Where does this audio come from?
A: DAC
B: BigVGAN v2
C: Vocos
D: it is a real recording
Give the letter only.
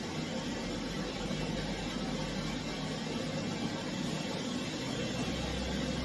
D